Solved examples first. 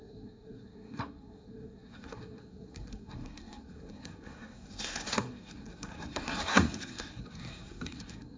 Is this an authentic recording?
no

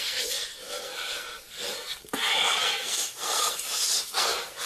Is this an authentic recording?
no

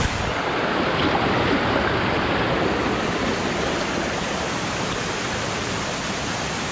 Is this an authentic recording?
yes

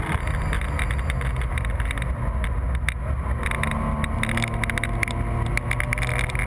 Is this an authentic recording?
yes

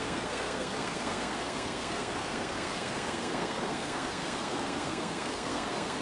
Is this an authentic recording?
no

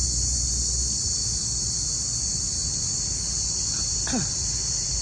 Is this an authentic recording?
yes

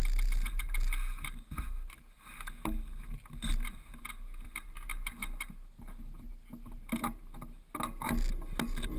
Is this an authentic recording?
yes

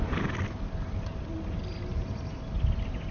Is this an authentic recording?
yes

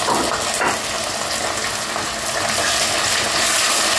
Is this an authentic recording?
yes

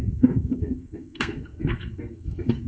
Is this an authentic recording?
no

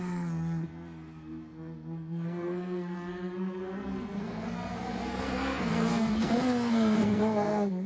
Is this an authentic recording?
no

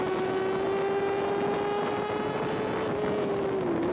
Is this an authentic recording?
yes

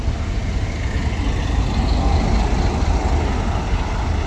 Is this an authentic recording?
yes